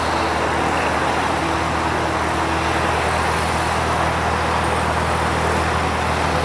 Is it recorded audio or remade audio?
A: recorded